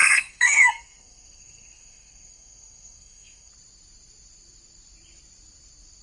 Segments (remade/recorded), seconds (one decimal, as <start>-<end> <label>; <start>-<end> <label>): 0.0-3.5 remade; 3.5-6.0 recorded